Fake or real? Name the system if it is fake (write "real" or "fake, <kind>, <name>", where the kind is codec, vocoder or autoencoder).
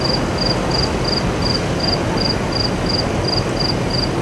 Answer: real